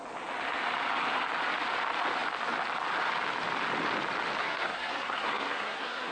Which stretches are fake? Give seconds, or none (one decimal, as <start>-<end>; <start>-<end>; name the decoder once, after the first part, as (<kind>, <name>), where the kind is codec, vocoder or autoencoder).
4.4-6.1 (codec, SNAC)